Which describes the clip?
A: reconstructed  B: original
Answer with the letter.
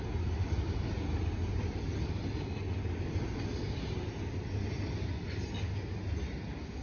B